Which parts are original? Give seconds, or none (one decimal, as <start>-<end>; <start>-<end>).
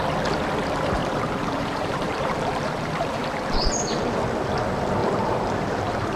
0.0-1.0; 4.2-5.0